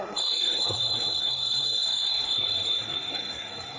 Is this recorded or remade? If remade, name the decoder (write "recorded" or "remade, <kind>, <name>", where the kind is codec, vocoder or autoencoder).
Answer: remade, codec, SNAC